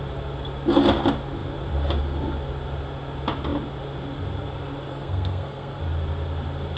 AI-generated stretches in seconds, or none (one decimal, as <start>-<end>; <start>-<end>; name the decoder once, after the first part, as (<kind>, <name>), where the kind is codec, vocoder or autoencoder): 4.9-5.8 (codec, SNAC)